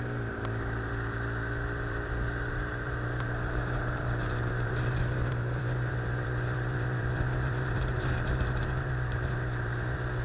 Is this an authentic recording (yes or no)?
no